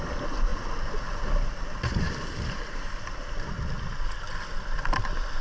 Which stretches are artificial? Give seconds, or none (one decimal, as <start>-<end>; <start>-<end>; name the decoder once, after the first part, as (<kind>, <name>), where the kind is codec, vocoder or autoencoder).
none